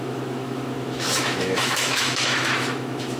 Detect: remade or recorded remade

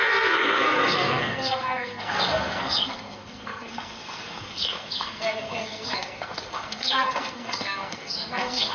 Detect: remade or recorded remade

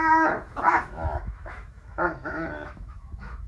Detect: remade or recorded remade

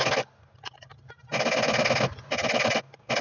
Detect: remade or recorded recorded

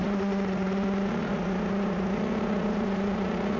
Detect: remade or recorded remade